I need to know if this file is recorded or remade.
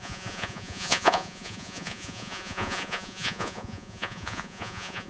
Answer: remade